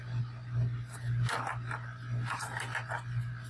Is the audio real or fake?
real